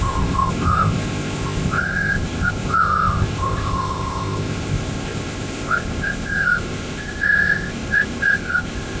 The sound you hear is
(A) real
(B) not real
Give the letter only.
B